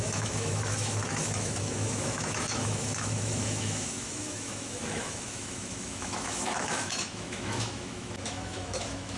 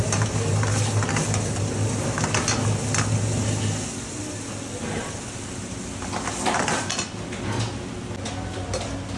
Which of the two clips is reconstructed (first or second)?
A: first